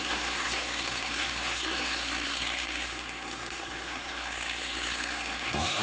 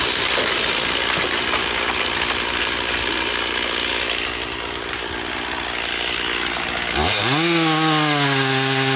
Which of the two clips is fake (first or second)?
first